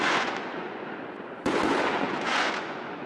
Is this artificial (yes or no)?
yes